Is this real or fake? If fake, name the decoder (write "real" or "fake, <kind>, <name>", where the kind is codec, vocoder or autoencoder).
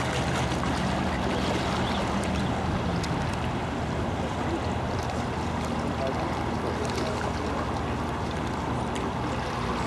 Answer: real